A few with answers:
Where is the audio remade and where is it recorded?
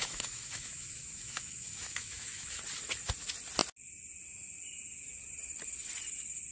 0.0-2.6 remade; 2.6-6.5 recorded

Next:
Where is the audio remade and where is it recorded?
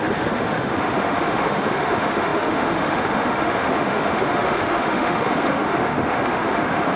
0.0-7.0 remade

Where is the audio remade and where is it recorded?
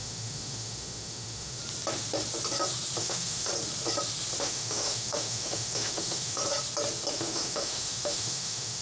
0.0-1.6 remade; 1.6-3.0 recorded; 3.0-3.5 remade; 3.5-4.4 recorded; 4.4-6.4 remade; 6.4-7.1 recorded; 7.1-8.8 remade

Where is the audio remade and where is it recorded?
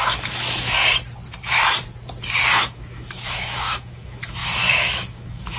0.0-0.8 remade; 0.8-2.6 recorded; 2.6-5.6 remade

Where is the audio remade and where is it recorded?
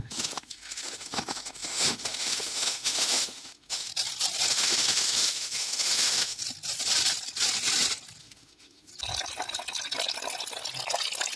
0.0-3.9 remade; 3.9-4.5 recorded; 4.5-6.4 remade; 6.4-8.2 recorded; 8.2-8.9 remade; 8.9-11.4 recorded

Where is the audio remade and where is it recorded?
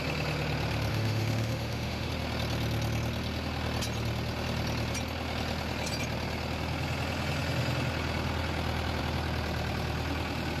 0.0-0.9 recorded; 0.9-2.1 remade; 2.1-10.6 recorded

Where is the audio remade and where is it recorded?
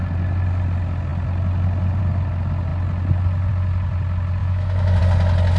0.0-4.4 recorded; 4.4-5.0 remade; 5.0-5.6 recorded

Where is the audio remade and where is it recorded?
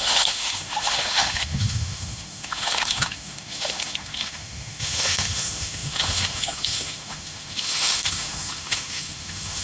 0.0-9.6 remade